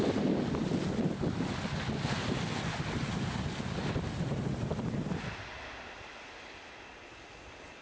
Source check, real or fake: real